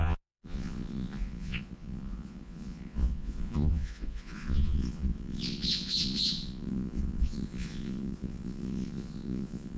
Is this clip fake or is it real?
fake